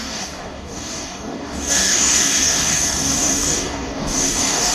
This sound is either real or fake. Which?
fake